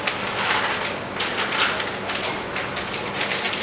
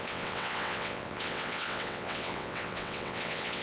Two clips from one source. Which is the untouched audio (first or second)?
first